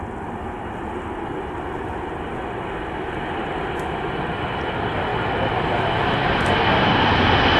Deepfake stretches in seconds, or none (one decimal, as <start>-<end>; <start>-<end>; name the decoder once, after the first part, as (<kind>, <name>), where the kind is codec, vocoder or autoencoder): none